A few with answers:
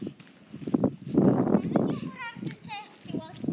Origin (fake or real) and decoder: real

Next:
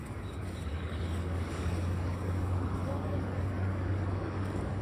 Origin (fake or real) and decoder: fake, codec, DAC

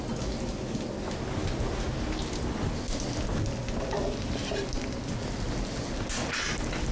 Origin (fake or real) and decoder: real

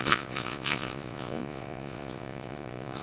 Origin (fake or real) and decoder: fake, vocoder, Vocos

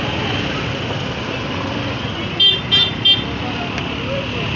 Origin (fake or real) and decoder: real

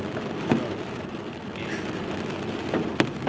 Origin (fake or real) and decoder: real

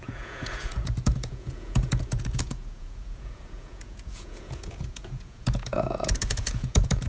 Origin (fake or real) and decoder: fake, vocoder, Vocos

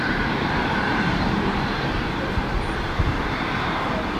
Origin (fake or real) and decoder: fake, vocoder, BigVGAN v2